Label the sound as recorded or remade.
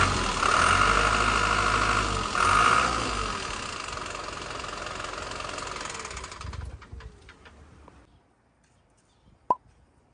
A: recorded